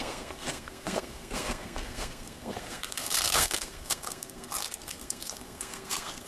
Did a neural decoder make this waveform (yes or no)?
yes